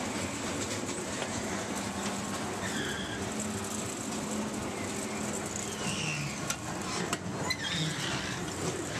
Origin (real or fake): real